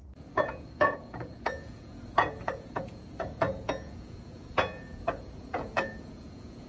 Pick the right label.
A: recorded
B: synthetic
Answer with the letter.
B